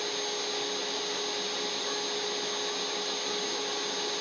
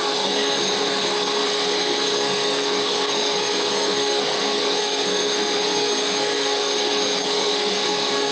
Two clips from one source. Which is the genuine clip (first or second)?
first